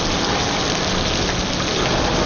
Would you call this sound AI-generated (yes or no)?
no